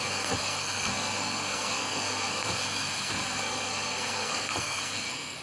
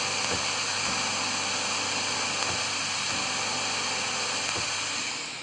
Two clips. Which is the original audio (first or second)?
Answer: second